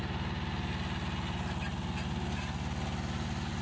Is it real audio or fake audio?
real